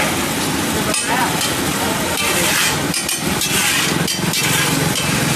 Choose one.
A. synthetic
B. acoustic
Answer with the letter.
A